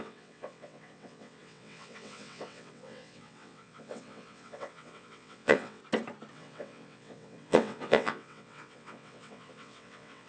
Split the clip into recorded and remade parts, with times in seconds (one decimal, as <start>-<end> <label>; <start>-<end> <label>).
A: 0.0-5.8 remade; 5.8-6.3 recorded; 6.3-10.3 remade